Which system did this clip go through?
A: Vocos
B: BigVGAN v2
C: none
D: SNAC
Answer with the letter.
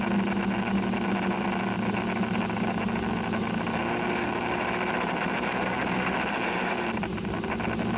C